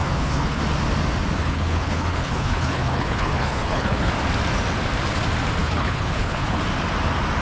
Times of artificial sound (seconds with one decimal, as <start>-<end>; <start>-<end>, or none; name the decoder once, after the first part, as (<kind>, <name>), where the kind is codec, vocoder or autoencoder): 0.0-0.6 (codec, HILCodec); 1.4-4.1; 5.6-6.6